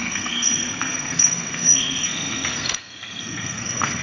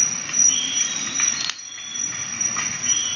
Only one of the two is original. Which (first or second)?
second